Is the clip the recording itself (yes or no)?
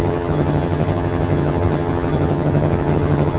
no